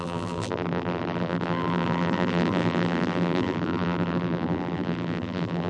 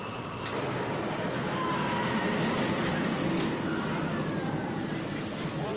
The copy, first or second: first